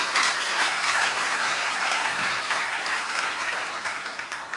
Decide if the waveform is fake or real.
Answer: fake